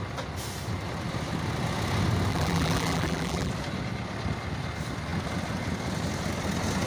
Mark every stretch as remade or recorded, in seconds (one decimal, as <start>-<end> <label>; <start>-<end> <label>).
0.0-2.3 recorded; 2.3-3.5 remade; 3.5-6.9 recorded